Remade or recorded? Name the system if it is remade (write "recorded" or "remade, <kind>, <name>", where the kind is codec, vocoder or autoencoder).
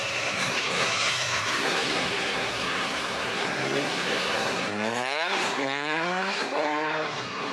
remade, codec, SNAC